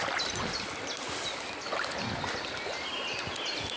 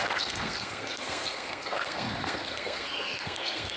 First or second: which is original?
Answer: first